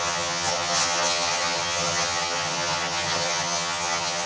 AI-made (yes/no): yes